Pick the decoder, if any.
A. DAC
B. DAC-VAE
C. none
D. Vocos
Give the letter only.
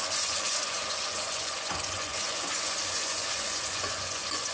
D